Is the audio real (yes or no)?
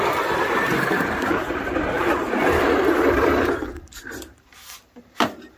no